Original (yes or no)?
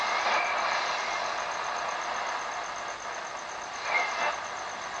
yes